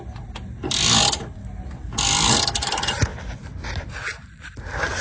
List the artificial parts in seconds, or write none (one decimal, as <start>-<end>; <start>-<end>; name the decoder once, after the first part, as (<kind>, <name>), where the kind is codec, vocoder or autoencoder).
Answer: none